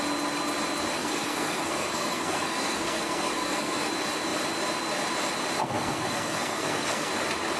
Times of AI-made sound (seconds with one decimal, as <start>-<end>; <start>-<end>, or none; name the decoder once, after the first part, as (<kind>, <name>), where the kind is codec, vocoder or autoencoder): 1.0-3.9 (codec, SNAC); 5.6-7.1